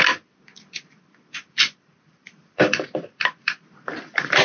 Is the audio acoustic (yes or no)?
no